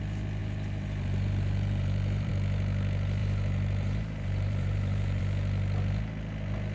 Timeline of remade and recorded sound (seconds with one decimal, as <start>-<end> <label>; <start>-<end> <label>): 0.0-0.4 recorded; 0.4-2.3 remade; 2.3-3.2 recorded; 3.2-5.2 remade; 5.2-6.7 recorded